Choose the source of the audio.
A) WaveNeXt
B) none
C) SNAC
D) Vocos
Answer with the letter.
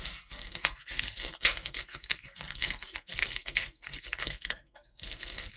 C